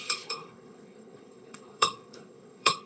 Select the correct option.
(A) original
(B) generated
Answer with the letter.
B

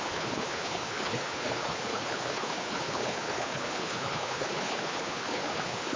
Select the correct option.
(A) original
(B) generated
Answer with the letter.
B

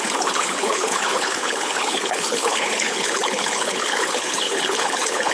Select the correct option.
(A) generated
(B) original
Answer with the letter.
A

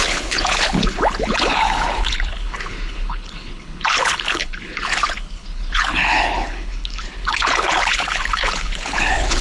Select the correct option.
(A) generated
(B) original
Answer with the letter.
A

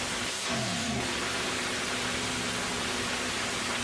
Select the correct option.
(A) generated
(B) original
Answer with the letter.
B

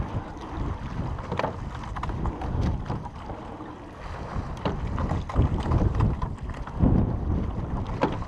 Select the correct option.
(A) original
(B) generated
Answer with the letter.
A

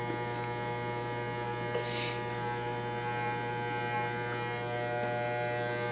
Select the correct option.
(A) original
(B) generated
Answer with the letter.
A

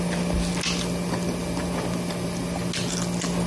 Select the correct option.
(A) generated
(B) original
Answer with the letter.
B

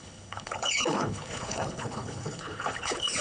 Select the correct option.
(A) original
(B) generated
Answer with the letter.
B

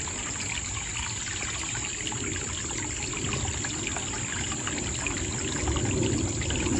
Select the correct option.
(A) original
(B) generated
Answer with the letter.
A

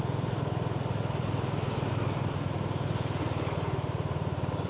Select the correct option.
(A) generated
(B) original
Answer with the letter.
B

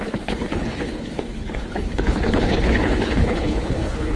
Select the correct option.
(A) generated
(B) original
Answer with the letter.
A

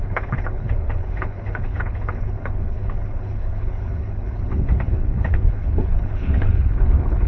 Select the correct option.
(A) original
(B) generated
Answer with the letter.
B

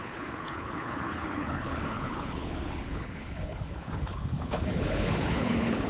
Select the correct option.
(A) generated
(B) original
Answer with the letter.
A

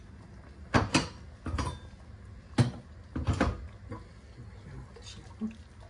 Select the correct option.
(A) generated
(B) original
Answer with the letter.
B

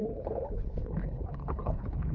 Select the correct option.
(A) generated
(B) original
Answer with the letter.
A